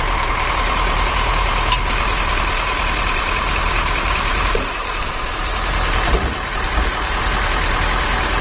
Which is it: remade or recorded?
remade